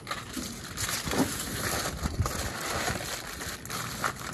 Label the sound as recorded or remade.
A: recorded